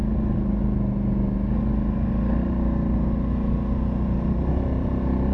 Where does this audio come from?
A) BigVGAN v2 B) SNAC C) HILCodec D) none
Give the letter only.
D